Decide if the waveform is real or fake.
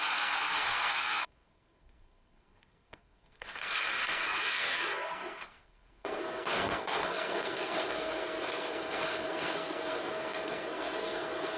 fake